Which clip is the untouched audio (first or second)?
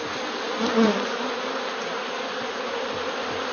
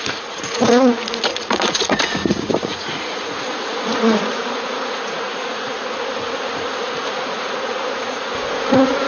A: first